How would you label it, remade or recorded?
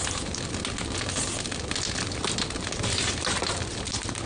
recorded